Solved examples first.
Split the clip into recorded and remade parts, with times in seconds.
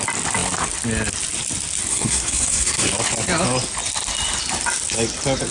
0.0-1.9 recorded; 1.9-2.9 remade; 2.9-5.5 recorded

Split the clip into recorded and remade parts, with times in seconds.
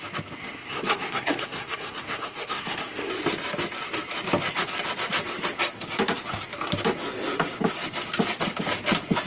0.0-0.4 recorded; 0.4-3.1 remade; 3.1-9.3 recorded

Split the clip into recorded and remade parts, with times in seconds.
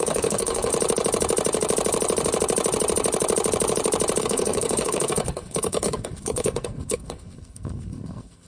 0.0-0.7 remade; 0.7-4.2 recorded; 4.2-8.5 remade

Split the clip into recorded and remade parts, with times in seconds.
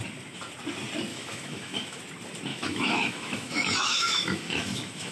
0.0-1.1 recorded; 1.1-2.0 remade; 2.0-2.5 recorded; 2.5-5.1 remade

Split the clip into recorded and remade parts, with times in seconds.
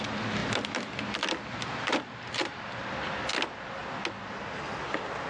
0.0-1.9 recorded; 1.9-2.9 remade; 2.9-5.3 recorded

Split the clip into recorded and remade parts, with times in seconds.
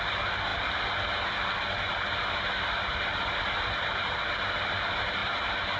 0.0-5.8 recorded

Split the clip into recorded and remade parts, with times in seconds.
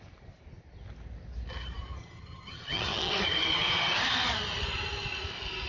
0.0-2.0 recorded; 2.0-3.1 remade; 3.1-5.7 recorded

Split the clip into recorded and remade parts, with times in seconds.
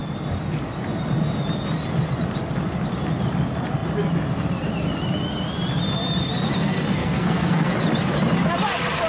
0.0-7.0 recorded; 7.0-7.7 remade; 7.7-9.1 recorded